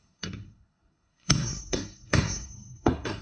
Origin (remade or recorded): remade